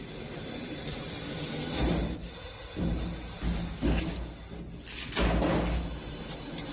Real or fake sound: real